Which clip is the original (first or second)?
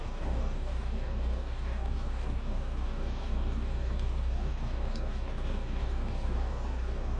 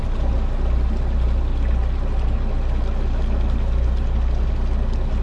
second